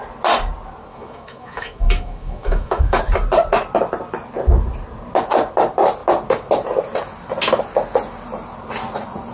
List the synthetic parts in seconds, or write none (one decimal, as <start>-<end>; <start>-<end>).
0.9-3.0